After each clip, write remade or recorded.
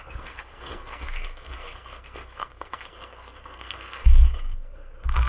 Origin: remade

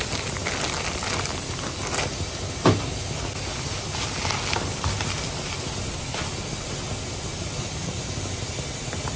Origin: recorded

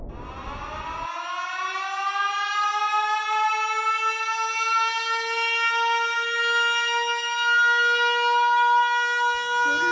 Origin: recorded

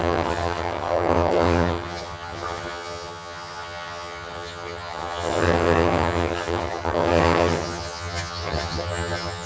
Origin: remade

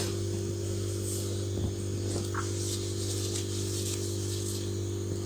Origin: recorded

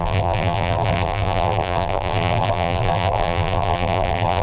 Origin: remade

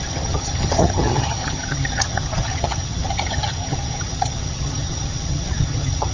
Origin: remade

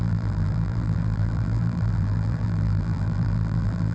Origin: remade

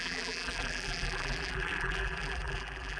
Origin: remade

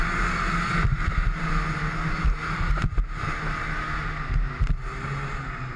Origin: recorded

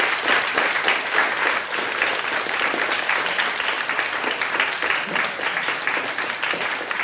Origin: recorded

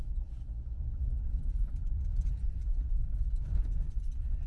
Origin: remade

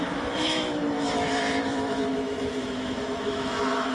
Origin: remade